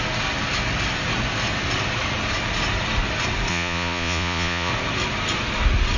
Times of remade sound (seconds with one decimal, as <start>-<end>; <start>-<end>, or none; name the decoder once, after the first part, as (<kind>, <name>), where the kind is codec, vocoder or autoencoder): 3.5-4.7 (vocoder, Vocos)